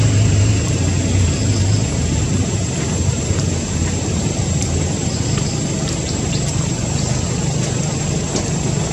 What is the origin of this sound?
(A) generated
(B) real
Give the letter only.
A